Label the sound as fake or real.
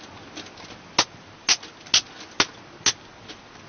real